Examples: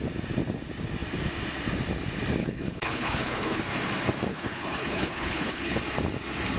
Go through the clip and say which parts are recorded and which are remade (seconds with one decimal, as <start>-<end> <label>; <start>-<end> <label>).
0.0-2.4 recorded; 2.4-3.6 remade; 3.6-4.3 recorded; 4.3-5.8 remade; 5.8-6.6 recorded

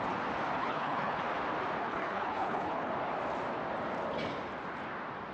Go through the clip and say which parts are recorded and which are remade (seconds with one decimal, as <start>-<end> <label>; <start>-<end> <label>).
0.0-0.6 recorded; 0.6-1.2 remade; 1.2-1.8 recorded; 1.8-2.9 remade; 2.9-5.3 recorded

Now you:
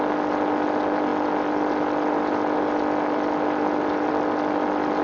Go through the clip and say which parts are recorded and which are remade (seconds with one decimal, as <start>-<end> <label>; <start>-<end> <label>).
0.0-5.0 recorded